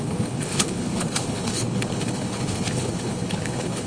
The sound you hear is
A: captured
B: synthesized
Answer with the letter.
B